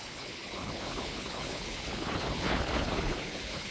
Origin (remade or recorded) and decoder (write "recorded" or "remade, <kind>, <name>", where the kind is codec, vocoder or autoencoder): remade, codec, HILCodec